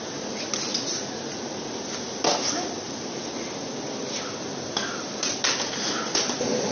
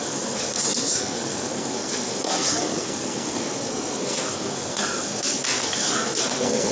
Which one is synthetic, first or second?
second